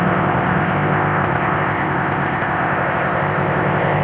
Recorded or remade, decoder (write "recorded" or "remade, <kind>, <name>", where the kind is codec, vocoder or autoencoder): remade, codec, ZipCodec